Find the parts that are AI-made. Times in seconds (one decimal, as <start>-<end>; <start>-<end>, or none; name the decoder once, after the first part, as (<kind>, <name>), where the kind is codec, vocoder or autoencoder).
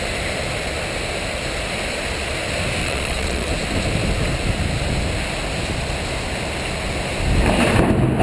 2.8-3.5 (vocoder, Vocos)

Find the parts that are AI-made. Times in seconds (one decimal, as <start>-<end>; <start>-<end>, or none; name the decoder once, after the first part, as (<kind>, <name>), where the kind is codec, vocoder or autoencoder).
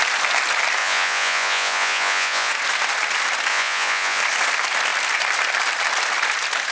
0.8-2.5 (vocoder, Vocos); 3.5-4.2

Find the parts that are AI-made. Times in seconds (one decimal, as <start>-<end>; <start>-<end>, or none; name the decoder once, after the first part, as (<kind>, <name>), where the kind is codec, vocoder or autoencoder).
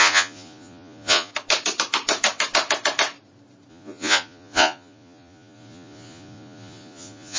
0.0-1.3 (vocoder, Vocos); 3.7-7.4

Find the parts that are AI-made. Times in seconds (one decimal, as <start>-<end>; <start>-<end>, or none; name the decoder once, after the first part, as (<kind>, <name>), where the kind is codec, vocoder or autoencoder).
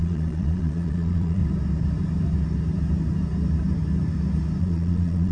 0.0-1.4 (vocoder, Vocos); 4.6-5.3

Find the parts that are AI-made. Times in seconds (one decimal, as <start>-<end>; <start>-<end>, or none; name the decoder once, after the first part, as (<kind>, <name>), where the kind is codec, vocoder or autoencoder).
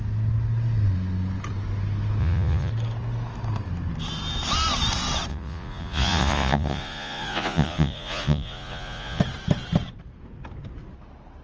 2.2-2.7 (vocoder, Vocos); 5.3-9.2